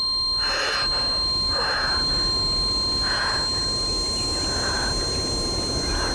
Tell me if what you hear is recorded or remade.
recorded